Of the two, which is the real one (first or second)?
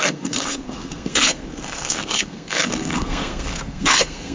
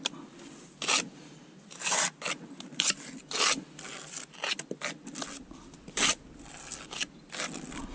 second